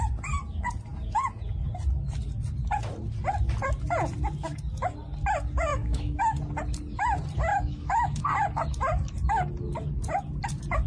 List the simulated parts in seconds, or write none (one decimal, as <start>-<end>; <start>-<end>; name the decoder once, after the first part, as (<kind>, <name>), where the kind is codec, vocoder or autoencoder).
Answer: 5.7-6.2 (autoencoder, DAC-VAE); 7.5-8.2